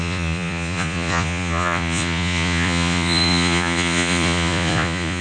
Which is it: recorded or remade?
remade